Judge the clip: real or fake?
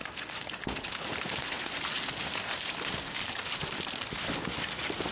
real